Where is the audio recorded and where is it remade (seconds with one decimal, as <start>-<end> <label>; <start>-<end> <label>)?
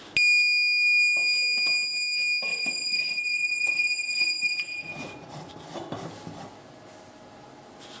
0.0-2.5 recorded; 2.5-5.5 remade; 5.5-8.0 recorded